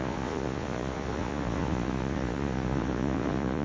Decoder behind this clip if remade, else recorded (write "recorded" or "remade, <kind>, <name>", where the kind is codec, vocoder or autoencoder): remade, vocoder, Vocos